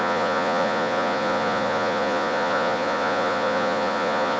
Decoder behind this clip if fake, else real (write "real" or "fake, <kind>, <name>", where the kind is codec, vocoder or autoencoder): fake, vocoder, Vocos